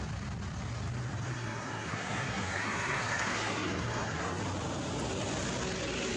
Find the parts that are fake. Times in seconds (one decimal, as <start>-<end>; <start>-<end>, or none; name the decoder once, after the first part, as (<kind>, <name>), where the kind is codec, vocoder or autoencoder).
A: 1.3-4.4 (codec, SNAC)